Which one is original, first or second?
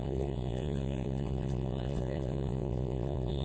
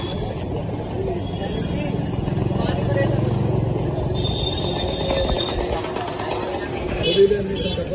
second